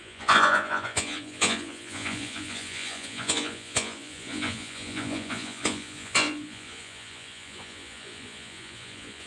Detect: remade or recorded remade